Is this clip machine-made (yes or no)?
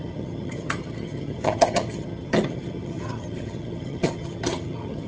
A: yes